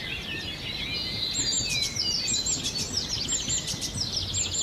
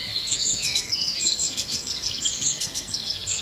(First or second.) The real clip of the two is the first